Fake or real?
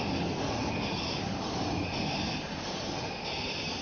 real